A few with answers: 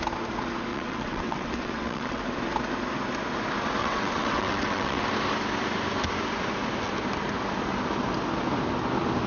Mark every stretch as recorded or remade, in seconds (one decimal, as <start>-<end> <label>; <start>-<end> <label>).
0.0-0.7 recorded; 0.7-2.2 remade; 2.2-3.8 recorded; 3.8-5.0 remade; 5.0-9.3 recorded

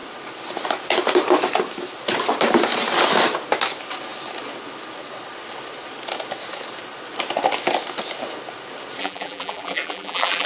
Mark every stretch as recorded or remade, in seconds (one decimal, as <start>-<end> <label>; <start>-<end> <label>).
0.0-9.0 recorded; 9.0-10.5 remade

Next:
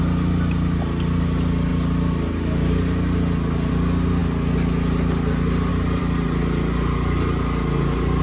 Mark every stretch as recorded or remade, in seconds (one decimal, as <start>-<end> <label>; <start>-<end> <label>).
0.0-8.2 recorded

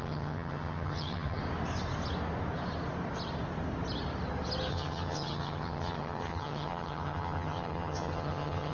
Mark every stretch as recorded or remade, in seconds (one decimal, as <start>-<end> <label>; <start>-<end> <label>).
0.0-1.4 remade; 1.4-4.7 recorded; 4.7-8.7 remade

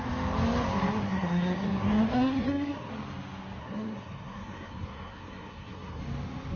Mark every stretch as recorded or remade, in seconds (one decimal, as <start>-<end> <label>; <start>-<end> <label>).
0.0-1.0 recorded; 1.0-2.9 remade; 2.9-3.6 recorded; 3.6-6.0 remade; 6.0-6.6 recorded